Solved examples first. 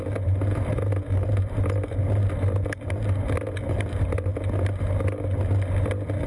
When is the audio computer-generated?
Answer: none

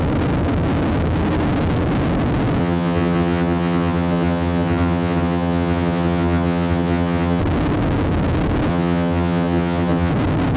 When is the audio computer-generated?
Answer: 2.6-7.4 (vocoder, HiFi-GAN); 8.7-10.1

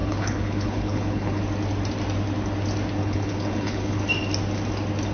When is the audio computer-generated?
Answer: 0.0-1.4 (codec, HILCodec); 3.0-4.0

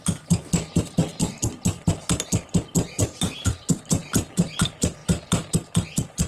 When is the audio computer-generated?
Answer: 1.1-1.9 (vocoder, BigVGAN v2); 4.0-4.5

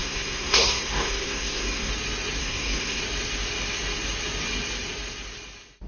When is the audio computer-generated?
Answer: 0.0-1.9 (codec, SNAC); 2.4-3.0

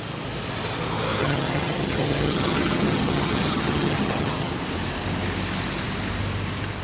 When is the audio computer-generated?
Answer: 1.2-4.5 (vocoder, HiFi-GAN)

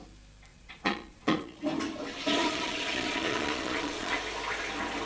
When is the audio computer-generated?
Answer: 0.5-1.6 (vocoder, Vocos); 2.4-4.2

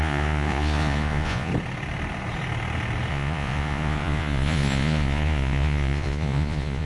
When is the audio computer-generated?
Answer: 0.0-1.5 (vocoder, Vocos); 3.1-6.9